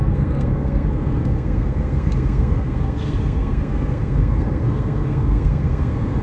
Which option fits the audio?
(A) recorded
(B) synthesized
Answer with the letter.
B